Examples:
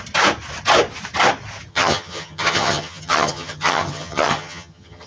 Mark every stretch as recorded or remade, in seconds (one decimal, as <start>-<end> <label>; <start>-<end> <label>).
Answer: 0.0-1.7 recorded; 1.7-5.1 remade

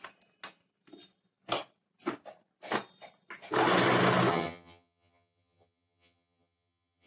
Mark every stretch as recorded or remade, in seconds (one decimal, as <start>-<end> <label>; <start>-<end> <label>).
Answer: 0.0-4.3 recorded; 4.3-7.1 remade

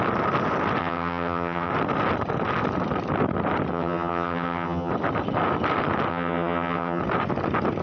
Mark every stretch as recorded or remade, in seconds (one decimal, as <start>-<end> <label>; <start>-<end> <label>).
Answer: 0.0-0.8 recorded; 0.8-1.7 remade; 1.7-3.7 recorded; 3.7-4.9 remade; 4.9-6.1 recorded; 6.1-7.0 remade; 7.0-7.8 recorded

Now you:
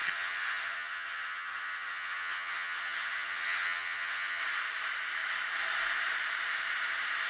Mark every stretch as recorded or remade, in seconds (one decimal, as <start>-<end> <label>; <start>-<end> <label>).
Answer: 0.0-4.4 remade; 4.4-7.3 recorded

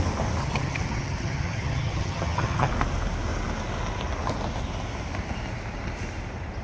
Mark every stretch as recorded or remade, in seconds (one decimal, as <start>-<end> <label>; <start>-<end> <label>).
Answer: 0.0-0.4 recorded; 0.4-2.7 remade; 2.7-6.6 recorded